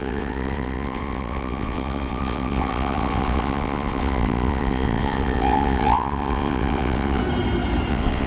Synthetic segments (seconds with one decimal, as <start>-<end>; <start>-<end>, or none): 0.0-7.2; 7.9-8.3